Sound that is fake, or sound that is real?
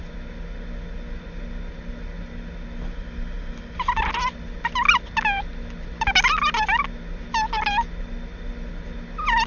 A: real